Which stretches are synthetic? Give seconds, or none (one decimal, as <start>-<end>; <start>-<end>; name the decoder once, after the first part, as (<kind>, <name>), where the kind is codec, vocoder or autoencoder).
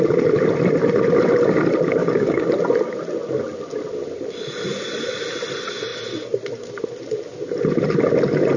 2.0-2.5 (codec, DAC)